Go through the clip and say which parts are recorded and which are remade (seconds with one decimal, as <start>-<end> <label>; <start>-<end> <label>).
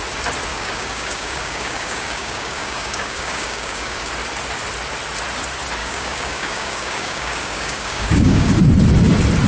0.0-0.5 recorded; 0.5-4.1 remade; 4.1-5.8 recorded; 5.8-8.5 remade; 8.5-9.5 recorded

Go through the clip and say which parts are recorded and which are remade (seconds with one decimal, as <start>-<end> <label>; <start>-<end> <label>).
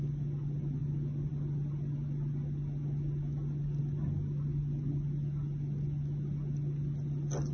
0.0-7.5 recorded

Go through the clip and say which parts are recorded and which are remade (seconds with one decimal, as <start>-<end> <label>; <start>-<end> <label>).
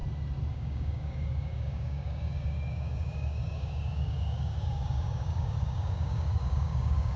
0.0-0.5 recorded; 0.5-7.2 remade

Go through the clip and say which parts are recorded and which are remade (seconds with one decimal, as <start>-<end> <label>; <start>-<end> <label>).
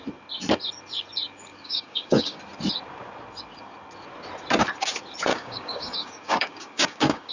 0.0-1.5 recorded; 1.5-2.4 remade; 2.4-5.3 recorded; 5.3-7.3 remade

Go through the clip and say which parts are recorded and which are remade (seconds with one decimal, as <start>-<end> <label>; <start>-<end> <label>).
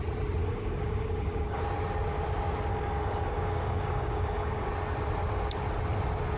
0.0-0.4 recorded; 0.4-1.6 remade; 1.6-2.7 recorded; 2.7-4.7 remade; 4.7-6.4 recorded